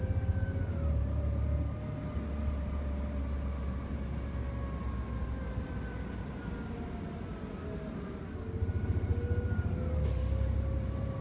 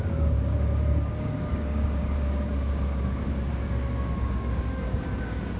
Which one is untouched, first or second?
first